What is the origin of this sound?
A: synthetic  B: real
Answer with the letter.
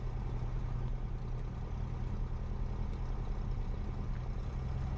B